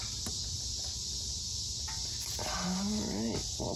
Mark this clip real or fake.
real